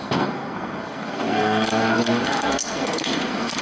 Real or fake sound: fake